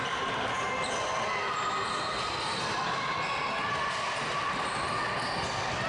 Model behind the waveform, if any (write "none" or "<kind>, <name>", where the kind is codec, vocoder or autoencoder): none